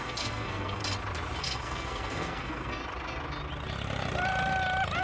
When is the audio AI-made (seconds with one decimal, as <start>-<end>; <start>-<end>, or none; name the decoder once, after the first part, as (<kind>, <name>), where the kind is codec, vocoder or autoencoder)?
0.0-0.8 (codec, SNAC); 1.4-2.8